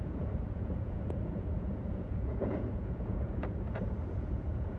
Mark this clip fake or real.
fake